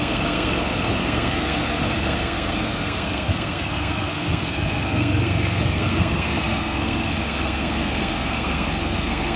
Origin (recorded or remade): remade